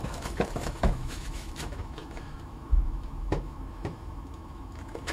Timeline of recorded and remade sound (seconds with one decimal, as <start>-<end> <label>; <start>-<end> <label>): 0.0-5.1 remade